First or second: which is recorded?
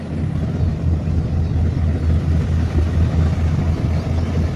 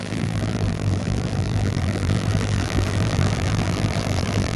first